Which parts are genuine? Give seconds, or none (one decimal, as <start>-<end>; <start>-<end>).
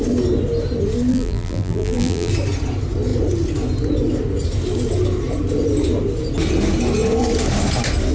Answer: 0.0-1.1; 2.3-8.1